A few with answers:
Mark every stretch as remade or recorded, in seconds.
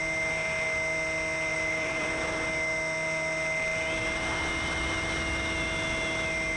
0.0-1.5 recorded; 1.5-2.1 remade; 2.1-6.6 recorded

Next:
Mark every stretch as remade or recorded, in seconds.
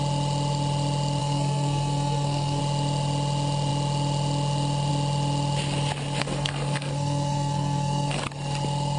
0.0-1.2 recorded; 1.2-2.6 remade; 2.6-6.2 recorded; 6.2-8.2 remade; 8.2-9.0 recorded